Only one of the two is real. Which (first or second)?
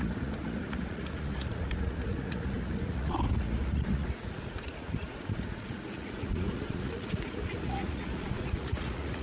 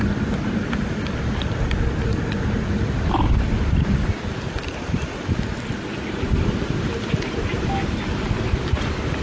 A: second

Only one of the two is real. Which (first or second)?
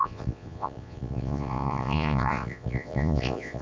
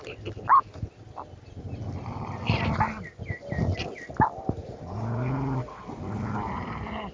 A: second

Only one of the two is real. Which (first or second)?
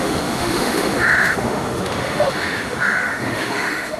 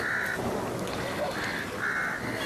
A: second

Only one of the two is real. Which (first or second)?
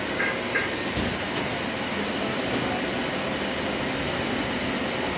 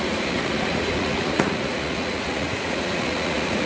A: first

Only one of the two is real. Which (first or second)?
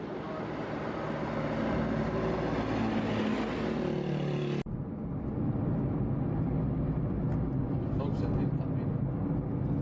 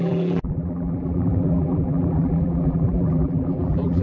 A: first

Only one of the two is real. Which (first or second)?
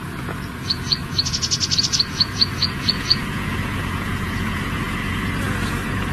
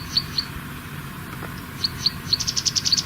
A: second